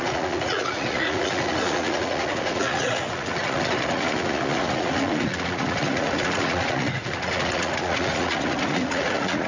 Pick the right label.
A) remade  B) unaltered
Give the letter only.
A